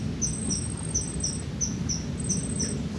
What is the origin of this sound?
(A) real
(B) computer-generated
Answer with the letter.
A